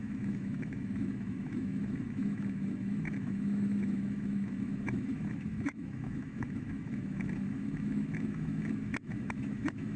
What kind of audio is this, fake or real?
fake